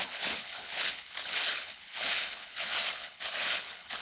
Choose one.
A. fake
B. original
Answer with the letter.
A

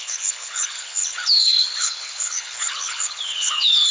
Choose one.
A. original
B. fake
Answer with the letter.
B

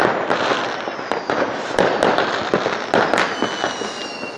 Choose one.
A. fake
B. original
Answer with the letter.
B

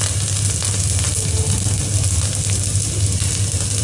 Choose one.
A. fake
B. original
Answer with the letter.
B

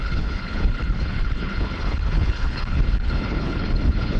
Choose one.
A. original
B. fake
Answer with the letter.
B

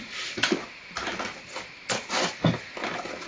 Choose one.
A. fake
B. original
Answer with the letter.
B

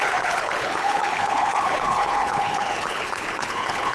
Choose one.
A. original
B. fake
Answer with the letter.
B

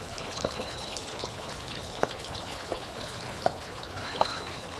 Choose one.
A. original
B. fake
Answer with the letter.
B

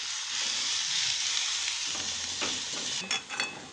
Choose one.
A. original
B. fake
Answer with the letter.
A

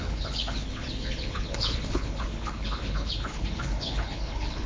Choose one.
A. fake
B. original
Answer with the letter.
A